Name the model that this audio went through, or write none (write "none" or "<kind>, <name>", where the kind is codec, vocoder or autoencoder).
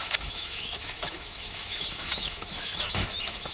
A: autoencoder, DAC-VAE